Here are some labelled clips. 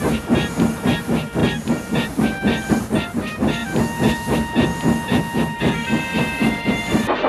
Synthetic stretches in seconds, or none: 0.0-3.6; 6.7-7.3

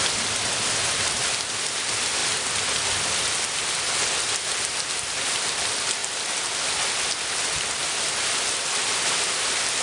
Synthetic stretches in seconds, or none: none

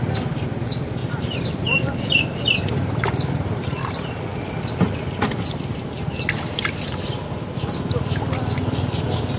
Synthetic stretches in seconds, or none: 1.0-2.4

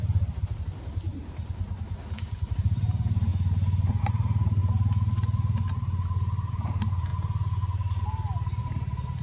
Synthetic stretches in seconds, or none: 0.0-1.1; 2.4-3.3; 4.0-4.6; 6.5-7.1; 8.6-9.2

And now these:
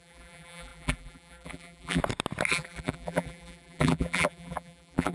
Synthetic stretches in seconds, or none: 0.0-2.0; 2.5-5.1